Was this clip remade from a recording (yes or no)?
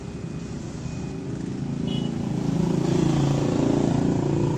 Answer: no